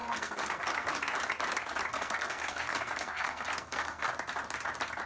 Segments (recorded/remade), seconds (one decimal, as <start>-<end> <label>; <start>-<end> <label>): 0.0-0.9 remade; 0.9-1.9 recorded; 1.9-4.1 remade; 4.1-5.1 recorded